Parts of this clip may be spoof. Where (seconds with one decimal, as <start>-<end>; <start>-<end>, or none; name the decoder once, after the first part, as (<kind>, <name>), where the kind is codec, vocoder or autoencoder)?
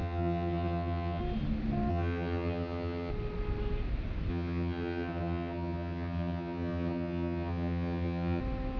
0.0-1.2 (vocoder, HiFi-GAN); 1.9-3.1; 4.3-8.4